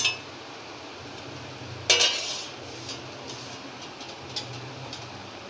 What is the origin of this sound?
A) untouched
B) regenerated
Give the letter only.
A